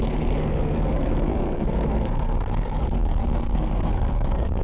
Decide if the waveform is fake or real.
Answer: fake